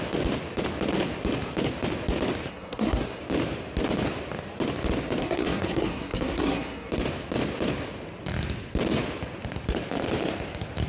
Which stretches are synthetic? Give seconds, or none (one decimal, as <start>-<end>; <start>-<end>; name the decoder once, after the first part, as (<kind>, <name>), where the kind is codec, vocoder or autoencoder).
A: 2.5-3.2 (codec, SNAC); 5.2-6.9